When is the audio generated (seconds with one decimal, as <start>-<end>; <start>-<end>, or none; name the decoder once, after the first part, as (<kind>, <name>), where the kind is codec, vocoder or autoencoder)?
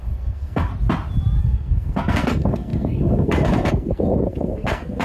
0.0-0.7 (codec, SNAC); 1.4-5.0